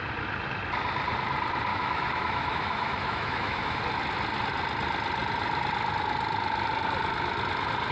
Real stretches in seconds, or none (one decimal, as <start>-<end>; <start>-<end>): 0.0-1.7; 3.8-7.9